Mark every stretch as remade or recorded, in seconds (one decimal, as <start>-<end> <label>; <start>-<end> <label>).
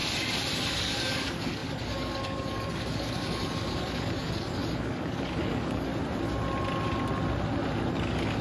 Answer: 0.0-0.7 recorded; 0.7-5.9 remade; 5.9-7.9 recorded; 7.9-8.4 remade